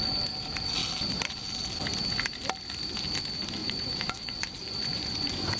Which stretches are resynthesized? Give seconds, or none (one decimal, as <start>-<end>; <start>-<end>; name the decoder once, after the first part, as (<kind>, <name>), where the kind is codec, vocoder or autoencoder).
3.6-5.6 (vocoder, Vocos)